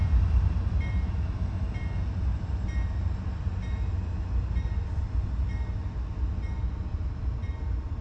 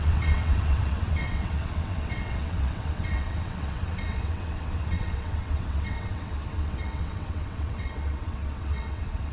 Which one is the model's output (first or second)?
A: second